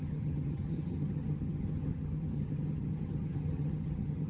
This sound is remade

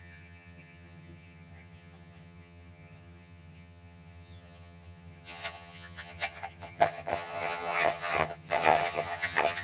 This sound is remade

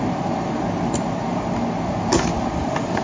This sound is recorded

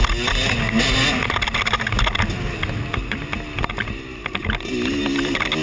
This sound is recorded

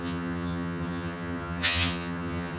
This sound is remade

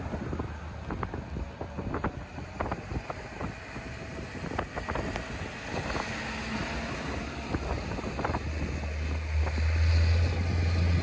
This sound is recorded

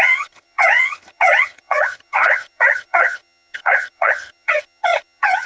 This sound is remade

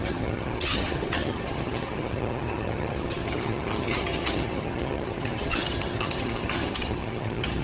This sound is remade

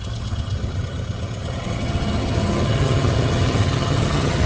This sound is remade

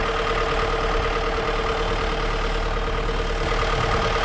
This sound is recorded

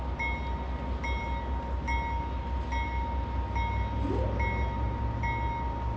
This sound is recorded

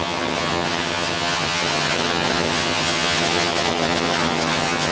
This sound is remade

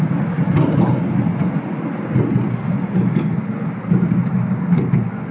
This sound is recorded